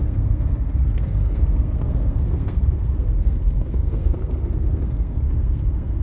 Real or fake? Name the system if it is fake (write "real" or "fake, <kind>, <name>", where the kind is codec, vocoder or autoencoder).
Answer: fake, codec, SNAC